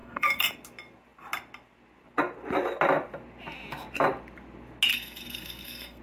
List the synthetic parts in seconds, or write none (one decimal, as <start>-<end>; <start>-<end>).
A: 0.0-0.5; 4.9-6.0